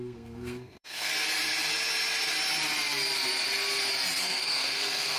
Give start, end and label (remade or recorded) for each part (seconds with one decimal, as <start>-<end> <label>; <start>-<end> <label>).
0.0-1.1 remade; 1.1-4.2 recorded; 4.2-5.2 remade